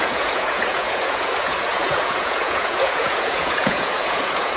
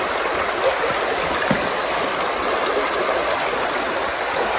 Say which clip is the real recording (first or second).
second